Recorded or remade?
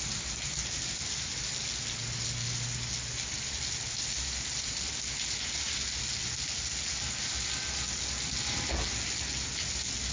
recorded